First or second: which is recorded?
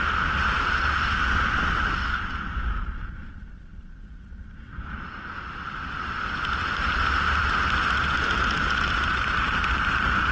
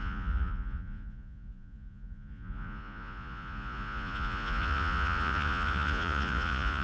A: first